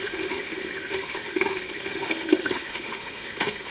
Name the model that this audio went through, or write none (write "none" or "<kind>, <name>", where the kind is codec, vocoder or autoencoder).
autoencoder, DAC-VAE